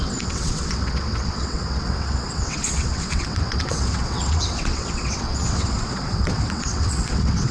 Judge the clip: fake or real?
fake